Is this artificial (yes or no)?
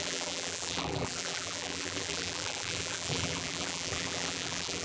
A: yes